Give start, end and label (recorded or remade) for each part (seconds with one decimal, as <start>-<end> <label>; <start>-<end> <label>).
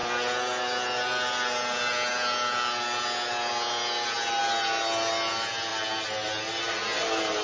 0.0-7.4 recorded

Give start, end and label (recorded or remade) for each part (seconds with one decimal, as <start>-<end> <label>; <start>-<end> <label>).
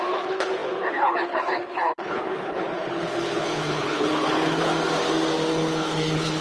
0.0-4.7 remade; 4.7-5.5 recorded; 5.5-6.4 remade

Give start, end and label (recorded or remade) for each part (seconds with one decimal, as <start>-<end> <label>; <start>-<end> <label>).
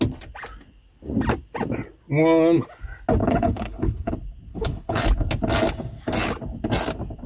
0.0-3.2 recorded; 3.2-4.1 remade; 4.1-4.5 recorded; 4.5-5.0 remade; 5.0-7.3 recorded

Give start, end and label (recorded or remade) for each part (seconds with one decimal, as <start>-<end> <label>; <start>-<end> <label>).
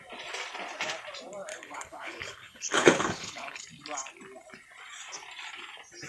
0.0-1.5 recorded; 1.5-3.6 remade; 3.6-6.1 recorded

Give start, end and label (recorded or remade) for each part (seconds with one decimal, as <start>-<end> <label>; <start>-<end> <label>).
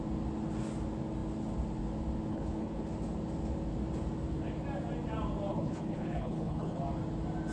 0.0-2.3 recorded; 2.3-2.8 remade; 2.8-5.5 recorded; 5.5-6.8 remade; 6.8-7.5 recorded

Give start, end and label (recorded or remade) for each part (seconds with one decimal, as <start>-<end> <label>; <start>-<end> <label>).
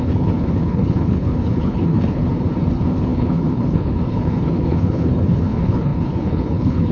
0.0-2.2 remade; 2.2-2.7 recorded; 2.7-6.9 remade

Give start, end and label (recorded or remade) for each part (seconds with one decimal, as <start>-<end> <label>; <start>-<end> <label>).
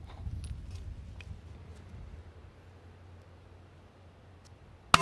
0.0-5.0 recorded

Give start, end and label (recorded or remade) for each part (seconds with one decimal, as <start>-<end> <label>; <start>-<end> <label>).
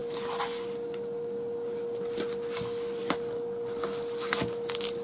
0.0-5.0 recorded